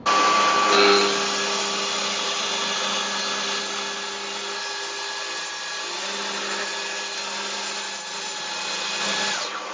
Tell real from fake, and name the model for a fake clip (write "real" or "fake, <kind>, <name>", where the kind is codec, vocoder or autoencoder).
real